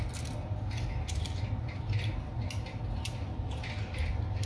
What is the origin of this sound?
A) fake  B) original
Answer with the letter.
B